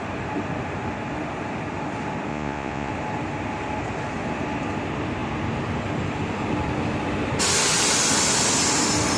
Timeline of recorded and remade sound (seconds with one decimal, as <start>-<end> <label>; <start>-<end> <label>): 0.0-2.3 recorded; 2.3-2.9 remade; 2.9-9.2 recorded